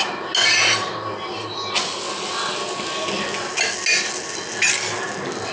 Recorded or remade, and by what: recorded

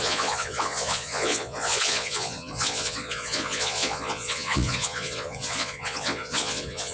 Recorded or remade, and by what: remade, vocoder, Vocos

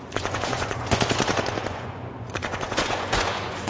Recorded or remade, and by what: remade, vocoder, Vocos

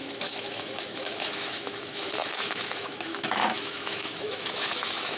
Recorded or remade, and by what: remade, autoencoder, DAC-VAE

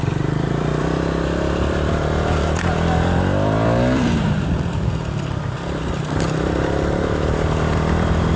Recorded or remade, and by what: remade, vocoder, BigVGAN v2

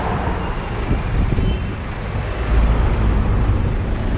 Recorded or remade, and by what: recorded